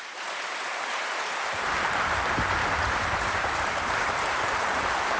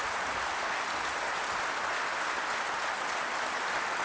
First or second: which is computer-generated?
first